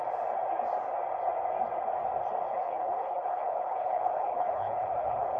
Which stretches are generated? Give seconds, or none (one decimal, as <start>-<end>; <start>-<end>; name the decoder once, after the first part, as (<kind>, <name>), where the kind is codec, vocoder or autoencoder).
2.5-5.4 (codec, HILCodec)

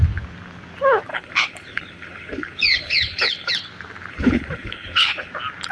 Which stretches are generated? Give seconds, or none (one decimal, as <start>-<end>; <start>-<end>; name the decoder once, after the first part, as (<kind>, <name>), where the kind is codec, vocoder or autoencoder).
1.1-3.5 (codec, HILCodec); 4.1-5.3